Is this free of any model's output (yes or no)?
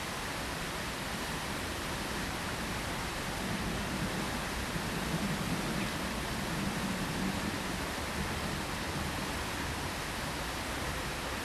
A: yes